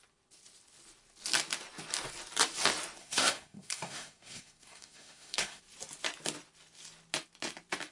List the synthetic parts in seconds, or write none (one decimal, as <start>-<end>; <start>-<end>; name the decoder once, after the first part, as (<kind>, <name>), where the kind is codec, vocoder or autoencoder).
3.0-5.6 (codec, SNAC)

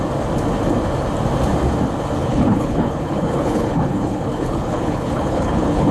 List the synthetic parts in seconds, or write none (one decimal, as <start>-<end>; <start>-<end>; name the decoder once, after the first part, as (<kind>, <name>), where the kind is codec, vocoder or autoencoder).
2.2-5.9 (codec, HILCodec)

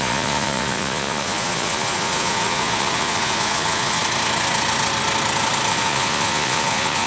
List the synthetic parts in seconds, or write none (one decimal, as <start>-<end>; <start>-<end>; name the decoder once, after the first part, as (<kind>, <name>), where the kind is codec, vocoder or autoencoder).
0.0-4.0 (vocoder, Vocos); 5.7-7.1

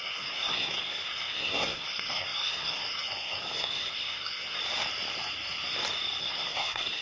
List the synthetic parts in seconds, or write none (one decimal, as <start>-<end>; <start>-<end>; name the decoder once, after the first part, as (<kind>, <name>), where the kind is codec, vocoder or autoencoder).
0.0-4.6 (codec, SNAC); 6.2-7.0